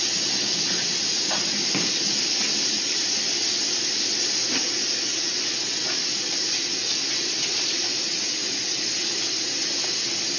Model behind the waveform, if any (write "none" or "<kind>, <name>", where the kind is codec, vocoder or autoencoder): none